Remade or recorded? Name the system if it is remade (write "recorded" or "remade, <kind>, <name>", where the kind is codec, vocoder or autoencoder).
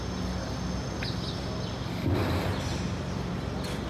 recorded